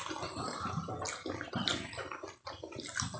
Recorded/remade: recorded